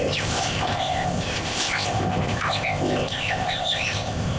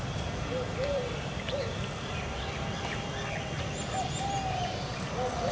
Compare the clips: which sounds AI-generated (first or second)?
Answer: first